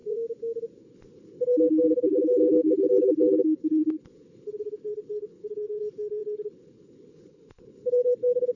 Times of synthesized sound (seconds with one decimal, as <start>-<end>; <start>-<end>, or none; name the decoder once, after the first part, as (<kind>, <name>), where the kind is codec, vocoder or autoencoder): 0.8-8.6 (codec, HILCodec)